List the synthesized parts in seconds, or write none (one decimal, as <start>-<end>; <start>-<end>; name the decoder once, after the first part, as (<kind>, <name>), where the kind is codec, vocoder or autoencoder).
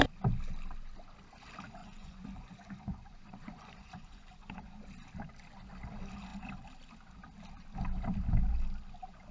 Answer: 1.8-4.8 (vocoder, Vocos)